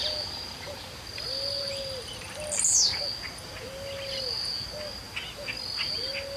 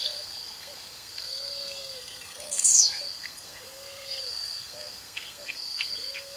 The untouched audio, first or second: first